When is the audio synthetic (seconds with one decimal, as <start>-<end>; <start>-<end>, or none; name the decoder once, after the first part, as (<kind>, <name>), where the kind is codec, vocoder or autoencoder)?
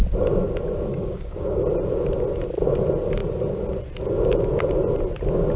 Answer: 0.9-1.6 (codec, DAC)